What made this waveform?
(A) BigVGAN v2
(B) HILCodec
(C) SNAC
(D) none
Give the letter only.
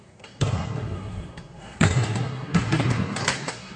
C